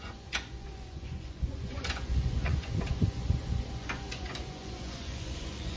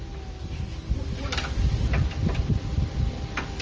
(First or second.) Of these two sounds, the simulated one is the first